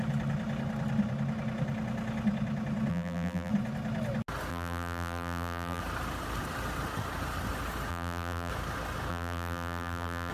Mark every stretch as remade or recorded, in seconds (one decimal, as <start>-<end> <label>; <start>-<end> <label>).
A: 0.0-2.9 recorded; 2.9-3.5 remade; 3.5-4.5 recorded; 4.5-5.8 remade; 5.8-7.9 recorded; 7.9-8.5 remade; 8.5-9.1 recorded; 9.1-10.3 remade